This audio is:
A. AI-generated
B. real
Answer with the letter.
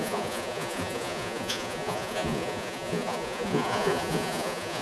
A